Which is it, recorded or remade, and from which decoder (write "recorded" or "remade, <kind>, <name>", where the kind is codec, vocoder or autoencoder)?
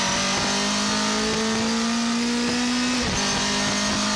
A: recorded